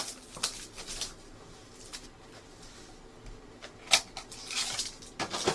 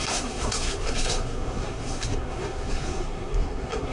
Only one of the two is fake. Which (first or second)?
second